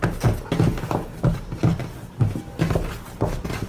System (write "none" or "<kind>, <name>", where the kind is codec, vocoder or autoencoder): none